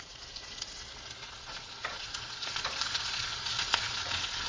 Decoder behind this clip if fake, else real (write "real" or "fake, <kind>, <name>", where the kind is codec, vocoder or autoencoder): fake, vocoder, Vocos